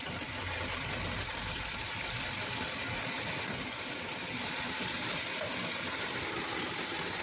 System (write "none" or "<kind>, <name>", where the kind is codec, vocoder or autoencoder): vocoder, BigVGAN v2